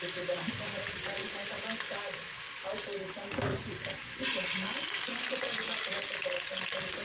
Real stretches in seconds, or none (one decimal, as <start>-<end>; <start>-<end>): 0.0-7.0